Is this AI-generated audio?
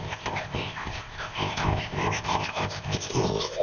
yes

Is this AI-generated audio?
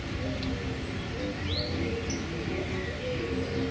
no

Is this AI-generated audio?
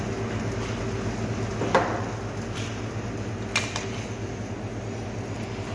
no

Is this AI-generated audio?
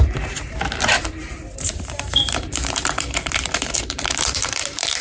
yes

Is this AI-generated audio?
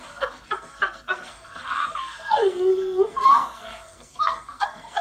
yes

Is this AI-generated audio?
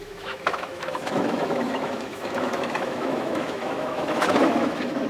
yes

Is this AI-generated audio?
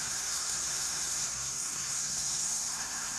yes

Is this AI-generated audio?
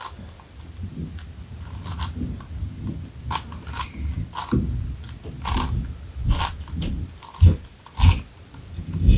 no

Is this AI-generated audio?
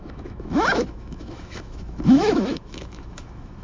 yes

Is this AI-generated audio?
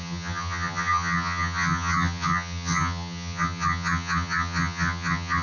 yes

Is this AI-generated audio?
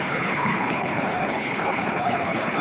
yes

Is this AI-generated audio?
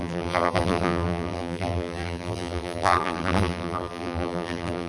yes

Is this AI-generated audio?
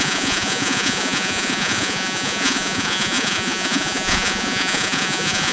yes